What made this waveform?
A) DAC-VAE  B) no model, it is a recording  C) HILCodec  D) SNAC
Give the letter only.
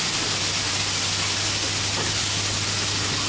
B